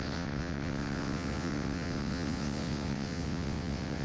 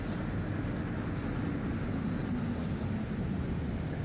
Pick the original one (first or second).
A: second